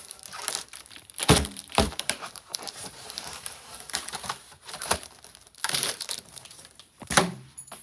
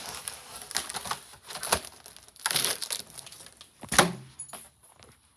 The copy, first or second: first